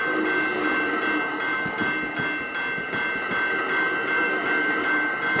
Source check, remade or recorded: recorded